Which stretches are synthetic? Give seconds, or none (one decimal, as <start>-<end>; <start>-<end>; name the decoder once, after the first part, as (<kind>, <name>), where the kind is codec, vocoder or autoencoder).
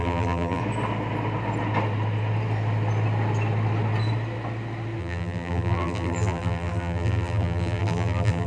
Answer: 0.0-0.6 (vocoder, BigVGAN v2); 5.0-8.5